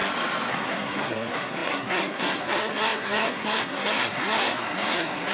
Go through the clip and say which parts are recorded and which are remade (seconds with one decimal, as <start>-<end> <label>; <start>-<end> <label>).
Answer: 0.0-0.5 recorded; 0.5-5.3 remade